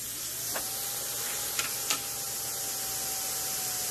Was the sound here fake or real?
real